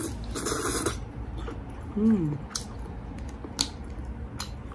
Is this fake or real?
real